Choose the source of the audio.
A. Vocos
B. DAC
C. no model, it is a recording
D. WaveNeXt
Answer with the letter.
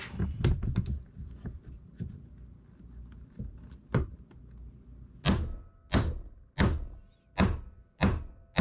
C